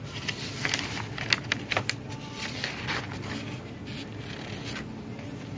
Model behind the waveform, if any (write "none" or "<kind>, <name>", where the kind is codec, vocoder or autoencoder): none